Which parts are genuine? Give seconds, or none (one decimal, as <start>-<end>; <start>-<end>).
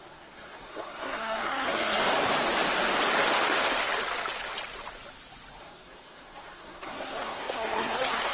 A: 2.0-5.6